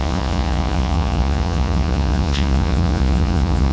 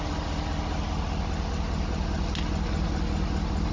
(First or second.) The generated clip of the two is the first